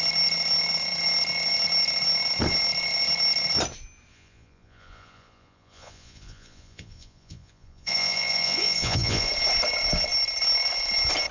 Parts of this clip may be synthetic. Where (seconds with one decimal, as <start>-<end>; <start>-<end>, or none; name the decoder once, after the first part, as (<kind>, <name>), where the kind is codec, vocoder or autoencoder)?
4.1-9.3 (vocoder, Vocos)